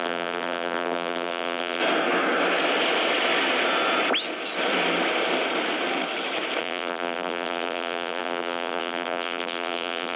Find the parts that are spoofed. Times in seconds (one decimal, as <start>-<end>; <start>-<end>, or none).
0.0-1.8; 6.6-10.2

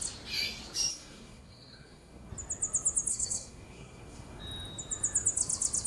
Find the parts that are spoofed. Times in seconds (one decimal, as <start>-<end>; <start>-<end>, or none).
0.9-2.3; 3.1-4.4